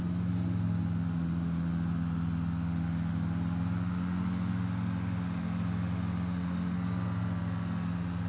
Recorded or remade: recorded